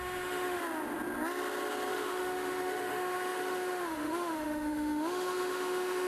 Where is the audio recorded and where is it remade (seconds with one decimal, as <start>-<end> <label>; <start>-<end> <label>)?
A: 0.0-0.6 remade; 0.6-1.9 recorded; 1.9-6.1 remade